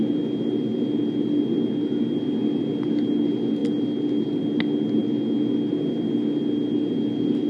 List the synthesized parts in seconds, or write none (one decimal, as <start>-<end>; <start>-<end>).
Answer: none